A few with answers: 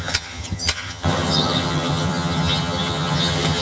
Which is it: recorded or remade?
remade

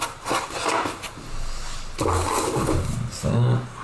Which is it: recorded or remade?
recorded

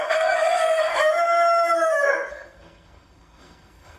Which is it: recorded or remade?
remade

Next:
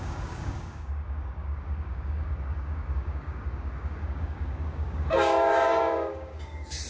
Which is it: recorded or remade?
remade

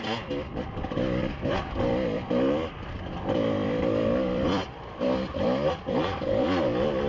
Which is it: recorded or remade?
remade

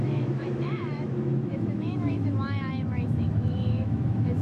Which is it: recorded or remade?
remade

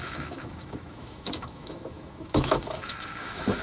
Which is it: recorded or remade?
remade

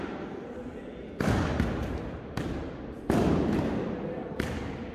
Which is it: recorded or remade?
recorded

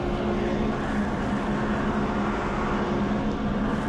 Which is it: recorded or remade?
recorded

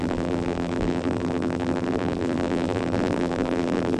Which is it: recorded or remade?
remade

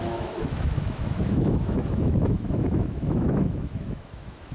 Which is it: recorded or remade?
remade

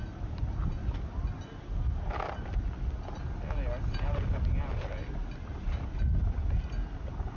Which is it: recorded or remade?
recorded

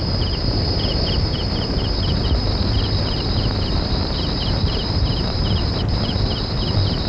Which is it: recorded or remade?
remade